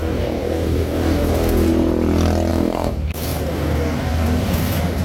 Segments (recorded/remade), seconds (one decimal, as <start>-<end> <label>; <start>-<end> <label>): 0.0-1.7 remade; 1.7-2.5 recorded; 2.5-5.0 remade